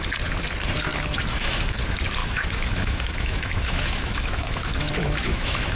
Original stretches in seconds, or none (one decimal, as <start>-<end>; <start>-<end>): 0.0-0.9; 1.8-2.2